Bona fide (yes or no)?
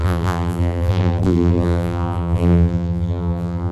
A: no